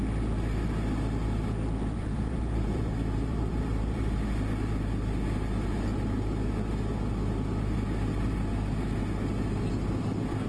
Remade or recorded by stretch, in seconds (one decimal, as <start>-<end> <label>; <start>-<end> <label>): 0.0-1.9 recorded; 1.9-4.3 remade; 4.3-10.5 recorded